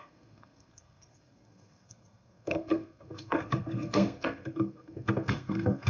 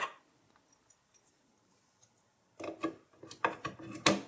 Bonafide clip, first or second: second